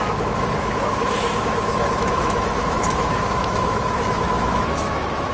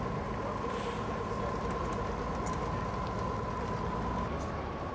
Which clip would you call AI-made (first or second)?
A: first